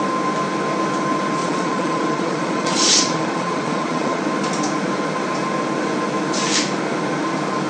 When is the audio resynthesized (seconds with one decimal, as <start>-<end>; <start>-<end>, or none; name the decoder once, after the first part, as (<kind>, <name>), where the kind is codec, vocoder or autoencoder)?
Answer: 1.4-4.2 (vocoder, Vocos)